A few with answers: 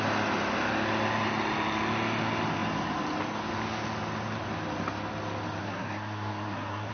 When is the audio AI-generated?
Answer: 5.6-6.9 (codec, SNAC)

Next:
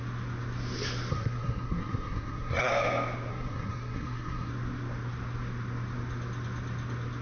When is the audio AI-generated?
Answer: 1.1-2.7 (codec, SNAC); 3.3-4.5

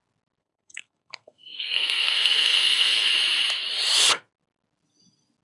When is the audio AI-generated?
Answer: 0.4-3.1 (codec, SNAC)